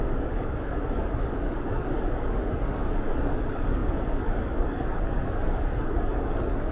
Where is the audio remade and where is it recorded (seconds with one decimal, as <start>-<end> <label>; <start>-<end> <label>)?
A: 0.0-6.7 remade